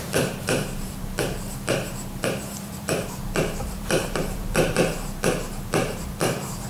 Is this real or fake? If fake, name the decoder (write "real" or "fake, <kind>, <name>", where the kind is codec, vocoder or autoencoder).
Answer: fake, vocoder, BigVGAN v2